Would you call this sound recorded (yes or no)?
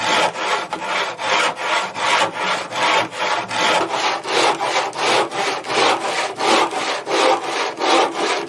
yes